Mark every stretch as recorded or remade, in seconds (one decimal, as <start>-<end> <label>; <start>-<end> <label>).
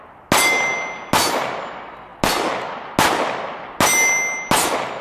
0.0-5.0 recorded